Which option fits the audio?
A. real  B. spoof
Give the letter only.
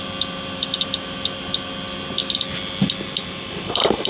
A